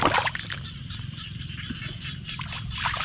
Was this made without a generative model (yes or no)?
no